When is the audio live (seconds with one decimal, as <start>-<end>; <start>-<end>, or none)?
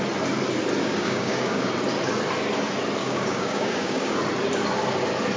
0.0-0.8; 1.7-3.0; 4.2-5.4